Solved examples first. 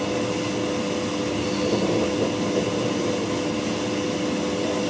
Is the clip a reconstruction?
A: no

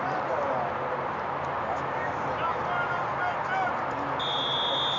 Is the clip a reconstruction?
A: no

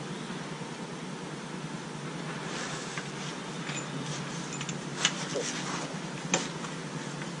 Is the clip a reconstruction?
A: no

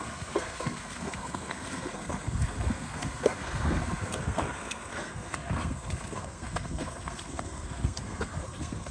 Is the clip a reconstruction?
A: yes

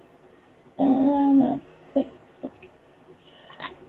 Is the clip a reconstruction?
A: yes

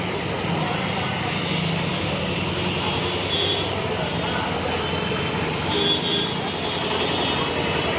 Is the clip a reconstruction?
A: no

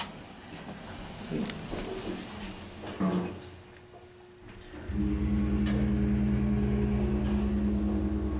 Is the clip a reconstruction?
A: no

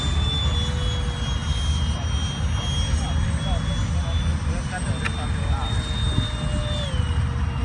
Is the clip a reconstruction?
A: no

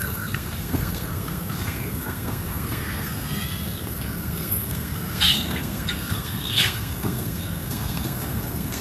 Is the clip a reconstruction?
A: yes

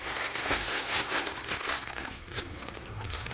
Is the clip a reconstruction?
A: yes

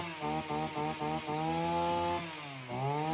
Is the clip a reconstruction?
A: no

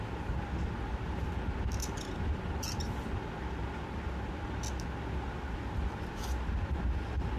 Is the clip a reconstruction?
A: no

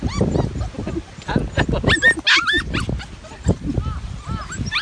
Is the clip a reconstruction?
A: no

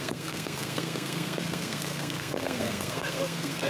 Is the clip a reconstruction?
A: yes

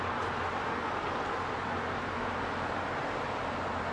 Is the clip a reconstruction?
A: no